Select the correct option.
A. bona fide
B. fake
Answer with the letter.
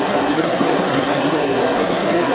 B